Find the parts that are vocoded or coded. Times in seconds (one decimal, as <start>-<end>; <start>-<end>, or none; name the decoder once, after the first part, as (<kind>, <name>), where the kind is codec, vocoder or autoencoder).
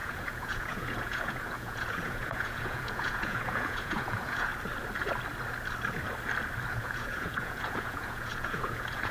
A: 0.0-4.5 (vocoder, Vocos); 6.7-9.1